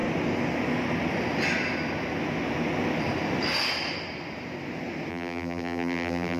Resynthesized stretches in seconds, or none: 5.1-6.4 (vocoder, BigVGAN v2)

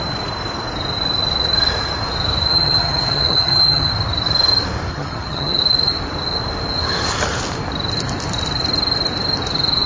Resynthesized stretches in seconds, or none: 2.5-3.9 (vocoder, HiFi-GAN); 4.9-5.6